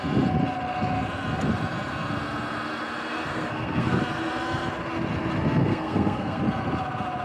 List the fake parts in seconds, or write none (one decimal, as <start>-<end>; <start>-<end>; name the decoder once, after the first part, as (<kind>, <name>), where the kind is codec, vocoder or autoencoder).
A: 3.3-4.0 (codec, SNAC); 5.6-6.4